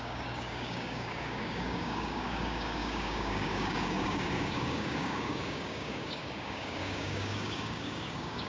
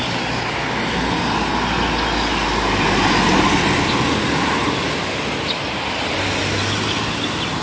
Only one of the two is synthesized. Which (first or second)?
first